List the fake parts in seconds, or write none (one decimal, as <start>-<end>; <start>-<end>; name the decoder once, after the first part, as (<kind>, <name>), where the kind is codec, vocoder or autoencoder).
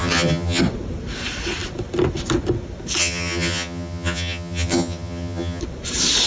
0.0-0.6 (vocoder, HiFi-GAN); 3.0-5.6